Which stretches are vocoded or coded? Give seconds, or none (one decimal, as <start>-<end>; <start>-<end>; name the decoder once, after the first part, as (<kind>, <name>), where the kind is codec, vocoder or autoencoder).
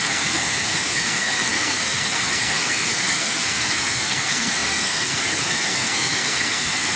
0.0-7.0 (codec, SNAC)